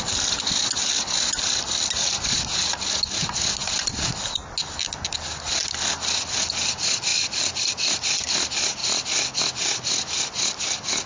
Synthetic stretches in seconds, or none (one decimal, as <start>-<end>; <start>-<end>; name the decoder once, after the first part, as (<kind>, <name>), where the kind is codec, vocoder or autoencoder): 7.1-7.7 (vocoder, BigVGAN v2); 8.8-9.4